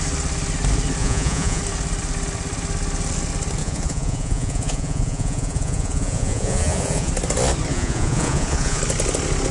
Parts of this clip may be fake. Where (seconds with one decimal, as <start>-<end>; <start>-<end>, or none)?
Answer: 1.0-1.6; 3.6-7.1; 7.7-8.8